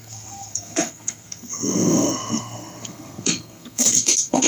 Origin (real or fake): fake